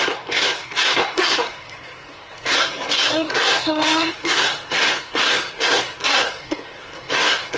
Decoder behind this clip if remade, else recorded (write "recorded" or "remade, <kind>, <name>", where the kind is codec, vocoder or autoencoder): remade, codec, SNAC